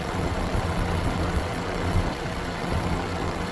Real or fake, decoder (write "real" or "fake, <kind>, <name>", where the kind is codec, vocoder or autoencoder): fake, vocoder, WaveNeXt